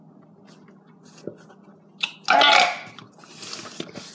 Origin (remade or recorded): recorded